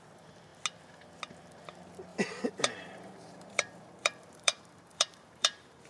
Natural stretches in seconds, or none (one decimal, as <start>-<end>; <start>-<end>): 0.0-2.1